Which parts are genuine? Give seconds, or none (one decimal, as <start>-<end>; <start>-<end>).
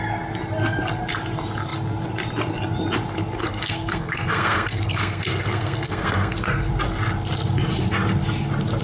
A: 0.0-3.4; 6.7-8.8